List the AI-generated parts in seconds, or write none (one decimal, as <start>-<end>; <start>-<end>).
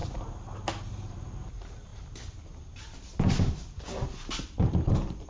none